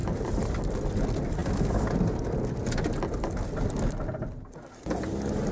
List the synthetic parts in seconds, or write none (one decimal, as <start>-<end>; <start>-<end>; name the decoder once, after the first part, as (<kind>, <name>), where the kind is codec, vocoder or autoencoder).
none